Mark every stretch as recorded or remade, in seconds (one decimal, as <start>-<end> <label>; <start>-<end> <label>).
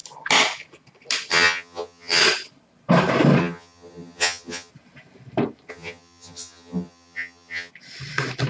0.0-1.3 recorded; 1.3-2.2 remade; 2.2-3.4 recorded; 3.4-4.7 remade; 4.7-5.7 recorded; 5.7-7.7 remade; 7.7-8.5 recorded